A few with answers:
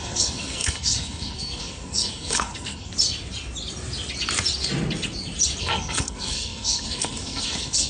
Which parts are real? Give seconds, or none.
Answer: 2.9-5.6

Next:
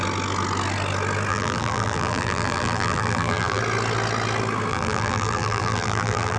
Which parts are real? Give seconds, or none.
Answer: 0.0-1.3; 3.6-4.7